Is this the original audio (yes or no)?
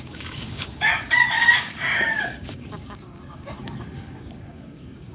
no